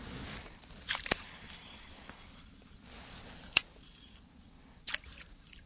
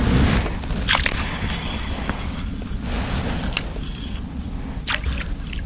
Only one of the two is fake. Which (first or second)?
first